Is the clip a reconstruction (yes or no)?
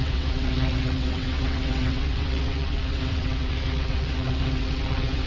yes